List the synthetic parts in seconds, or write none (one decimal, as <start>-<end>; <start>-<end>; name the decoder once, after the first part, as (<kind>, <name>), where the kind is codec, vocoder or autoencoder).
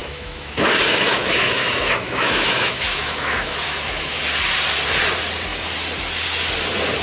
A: 0.0-4.2 (autoencoder, DAC-VAE)